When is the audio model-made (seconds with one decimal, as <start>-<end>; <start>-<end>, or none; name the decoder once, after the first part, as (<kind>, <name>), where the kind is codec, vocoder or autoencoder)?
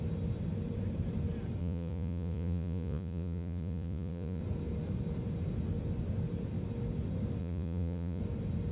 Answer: 1.6-4.4 (vocoder, Vocos); 7.4-8.2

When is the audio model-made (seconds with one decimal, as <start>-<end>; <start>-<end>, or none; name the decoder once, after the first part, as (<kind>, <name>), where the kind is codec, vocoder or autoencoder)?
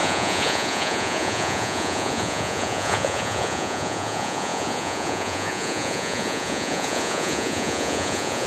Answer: 0.0-8.5 (vocoder, Vocos)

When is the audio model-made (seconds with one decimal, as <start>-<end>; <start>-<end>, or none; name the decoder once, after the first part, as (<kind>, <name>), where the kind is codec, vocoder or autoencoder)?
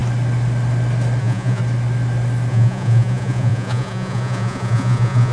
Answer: 1.2-1.6 (vocoder, Vocos); 2.5-5.3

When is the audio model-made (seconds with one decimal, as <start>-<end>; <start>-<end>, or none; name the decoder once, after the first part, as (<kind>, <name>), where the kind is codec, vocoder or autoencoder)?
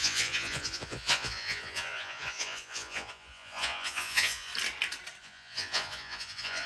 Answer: 0.0-4.5 (vocoder, Vocos); 5.2-6.7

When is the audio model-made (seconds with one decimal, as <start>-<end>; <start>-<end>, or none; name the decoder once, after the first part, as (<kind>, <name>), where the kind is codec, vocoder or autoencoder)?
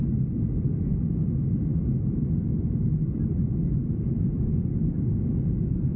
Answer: 3.8-4.5 (vocoder, Vocos)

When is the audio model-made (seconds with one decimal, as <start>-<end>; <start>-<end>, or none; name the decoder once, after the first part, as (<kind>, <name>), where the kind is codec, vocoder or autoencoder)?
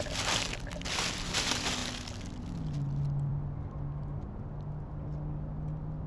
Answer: none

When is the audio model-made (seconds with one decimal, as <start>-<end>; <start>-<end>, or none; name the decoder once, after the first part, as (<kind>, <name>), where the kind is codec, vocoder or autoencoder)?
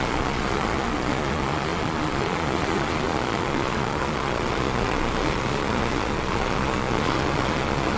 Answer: 0.0-8.0 (vocoder, Vocos)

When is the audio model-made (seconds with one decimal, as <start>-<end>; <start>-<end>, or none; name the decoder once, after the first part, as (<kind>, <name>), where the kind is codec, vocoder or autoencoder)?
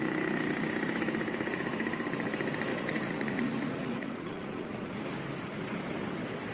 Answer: 2.7-5.0 (vocoder, Vocos)